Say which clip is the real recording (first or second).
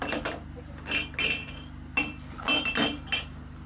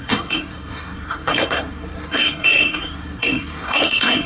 first